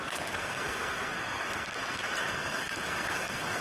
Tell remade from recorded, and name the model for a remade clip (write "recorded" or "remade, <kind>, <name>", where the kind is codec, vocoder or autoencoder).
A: remade, codec, SNAC